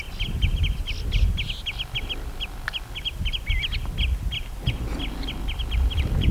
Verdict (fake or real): real